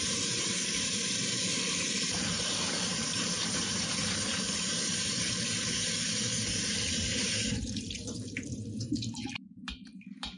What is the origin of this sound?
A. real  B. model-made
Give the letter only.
B